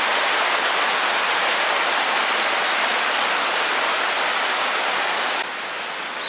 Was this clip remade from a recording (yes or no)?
no